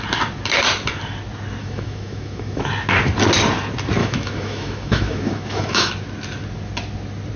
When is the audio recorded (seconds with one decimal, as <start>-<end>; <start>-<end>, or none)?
0.0-1.6; 2.7-4.0; 5.9-7.4